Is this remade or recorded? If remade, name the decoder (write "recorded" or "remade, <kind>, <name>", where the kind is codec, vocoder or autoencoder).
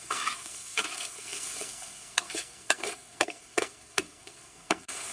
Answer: remade, codec, SNAC